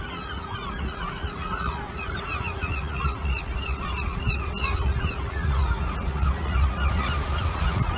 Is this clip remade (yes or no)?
yes